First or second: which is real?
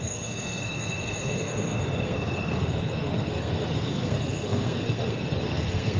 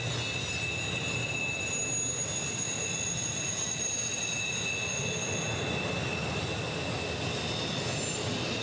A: second